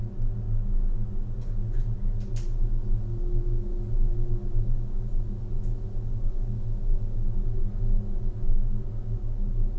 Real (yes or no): yes